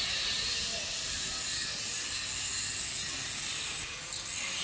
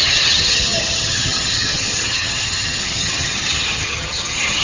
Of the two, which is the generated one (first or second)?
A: second